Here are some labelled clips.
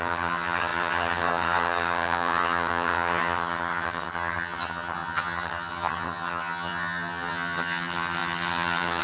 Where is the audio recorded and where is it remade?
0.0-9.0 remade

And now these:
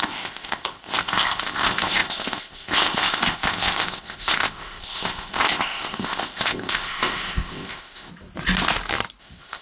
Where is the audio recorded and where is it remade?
0.0-8.1 remade; 8.1-9.2 recorded; 9.2-9.6 remade

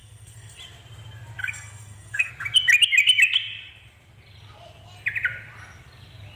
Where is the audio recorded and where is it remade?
0.0-0.6 remade; 0.6-1.4 recorded; 1.4-2.3 remade; 2.3-6.4 recorded